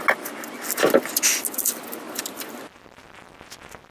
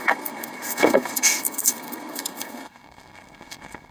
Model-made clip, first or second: second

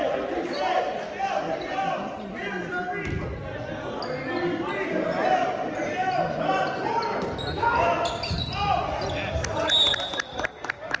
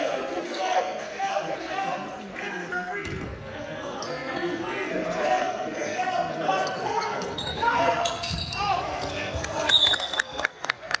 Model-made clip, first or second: second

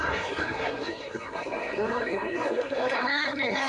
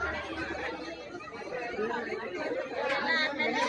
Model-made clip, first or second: first